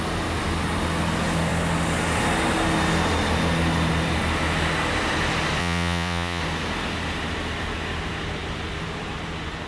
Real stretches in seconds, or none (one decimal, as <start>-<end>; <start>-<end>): 0.0-5.6; 6.4-9.7